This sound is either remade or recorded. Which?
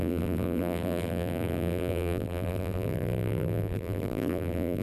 remade